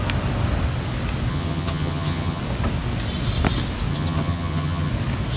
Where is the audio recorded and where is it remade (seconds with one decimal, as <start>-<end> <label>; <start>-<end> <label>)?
0.0-1.3 recorded; 1.3-2.4 remade; 2.4-3.9 recorded; 3.9-4.9 remade; 4.9-5.4 recorded